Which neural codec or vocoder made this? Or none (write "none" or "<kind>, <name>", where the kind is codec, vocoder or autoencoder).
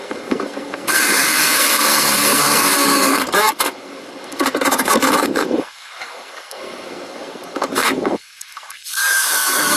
codec, SNAC